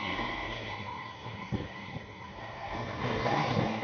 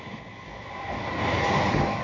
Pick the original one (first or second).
second